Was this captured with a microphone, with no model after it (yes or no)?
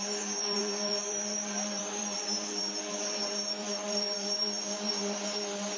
no